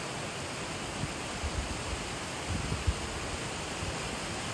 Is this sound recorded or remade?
recorded